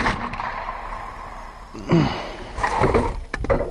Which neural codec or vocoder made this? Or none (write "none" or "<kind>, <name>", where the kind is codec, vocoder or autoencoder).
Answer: none